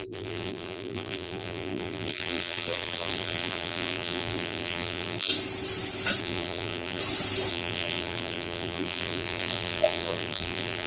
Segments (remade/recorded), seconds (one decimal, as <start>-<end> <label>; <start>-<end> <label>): 0.0-5.3 remade; 5.3-6.2 recorded; 6.2-7.0 remade; 7.0-7.5 recorded; 7.5-10.9 remade